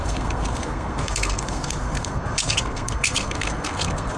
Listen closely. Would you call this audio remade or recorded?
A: remade